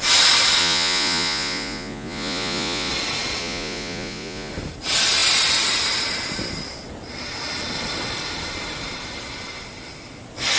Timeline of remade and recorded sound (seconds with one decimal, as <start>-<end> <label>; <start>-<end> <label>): 0.0-0.6 recorded; 0.6-2.9 remade; 2.9-3.4 recorded; 3.4-4.5 remade; 4.5-10.6 recorded